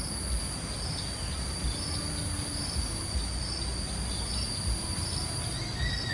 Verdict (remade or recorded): recorded